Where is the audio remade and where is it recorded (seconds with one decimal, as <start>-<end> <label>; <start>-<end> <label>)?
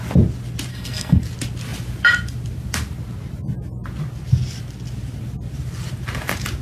0.0-0.7 recorded; 0.7-1.2 remade; 1.2-6.6 recorded